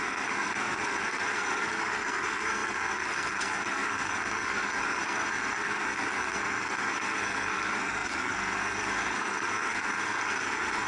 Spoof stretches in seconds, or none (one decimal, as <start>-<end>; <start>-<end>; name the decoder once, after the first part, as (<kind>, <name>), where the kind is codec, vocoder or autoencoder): 0.0-10.9 (codec, SNAC)